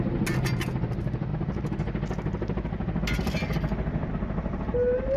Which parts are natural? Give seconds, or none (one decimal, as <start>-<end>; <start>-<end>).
0.0-5.2